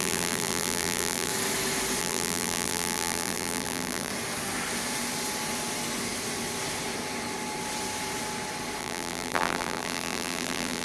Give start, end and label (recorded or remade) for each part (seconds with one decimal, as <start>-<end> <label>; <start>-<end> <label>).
0.0-1.3 remade; 1.3-2.0 recorded; 2.0-4.1 remade; 4.1-8.8 recorded; 8.8-10.8 remade